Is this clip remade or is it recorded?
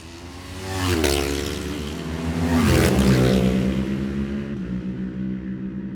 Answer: recorded